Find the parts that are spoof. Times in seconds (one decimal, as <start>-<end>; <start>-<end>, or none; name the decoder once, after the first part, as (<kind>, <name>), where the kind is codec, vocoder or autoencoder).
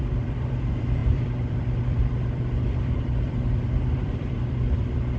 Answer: 0.0-5.2 (vocoder, BigVGAN v2)